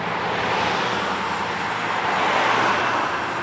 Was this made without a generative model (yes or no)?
yes